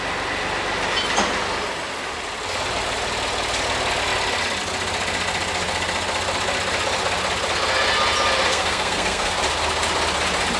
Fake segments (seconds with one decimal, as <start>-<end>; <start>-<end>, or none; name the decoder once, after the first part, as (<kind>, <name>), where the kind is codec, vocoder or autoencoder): 8.5-9.3 (codec, SNAC)